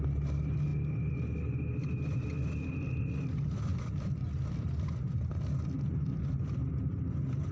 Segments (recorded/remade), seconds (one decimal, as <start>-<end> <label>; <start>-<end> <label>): 0.0-7.5 recorded